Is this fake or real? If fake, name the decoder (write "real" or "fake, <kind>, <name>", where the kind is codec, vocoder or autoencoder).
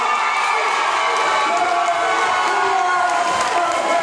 real